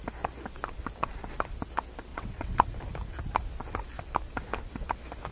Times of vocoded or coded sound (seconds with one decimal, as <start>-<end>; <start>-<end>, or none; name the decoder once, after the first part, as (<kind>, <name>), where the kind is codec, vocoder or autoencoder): 2.1-2.8 (vocoder, WaveNeXt)